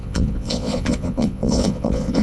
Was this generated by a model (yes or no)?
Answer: yes